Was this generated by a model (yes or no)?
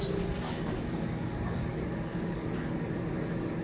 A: yes